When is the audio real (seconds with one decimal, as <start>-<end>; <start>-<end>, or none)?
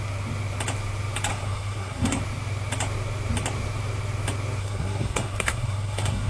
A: 0.0-1.3; 2.2-4.6